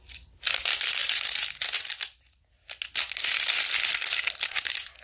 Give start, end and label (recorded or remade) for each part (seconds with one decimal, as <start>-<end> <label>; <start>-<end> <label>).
0.0-5.0 recorded